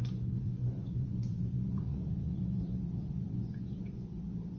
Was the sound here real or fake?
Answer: fake